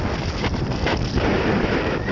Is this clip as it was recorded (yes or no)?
yes